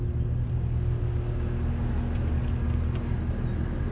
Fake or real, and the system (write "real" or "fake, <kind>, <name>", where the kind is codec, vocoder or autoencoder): real